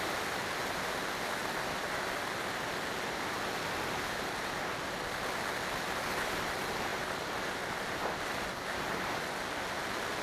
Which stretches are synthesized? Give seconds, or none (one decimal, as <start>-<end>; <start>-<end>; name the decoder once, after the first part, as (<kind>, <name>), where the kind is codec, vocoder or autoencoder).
none